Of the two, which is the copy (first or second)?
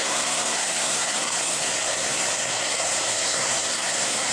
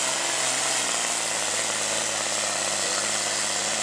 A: first